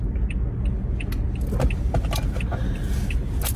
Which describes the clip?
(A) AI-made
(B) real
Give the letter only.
B